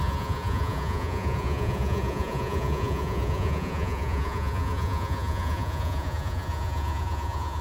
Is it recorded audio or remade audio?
remade